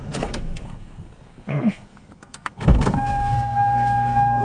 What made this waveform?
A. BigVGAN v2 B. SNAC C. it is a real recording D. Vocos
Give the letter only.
B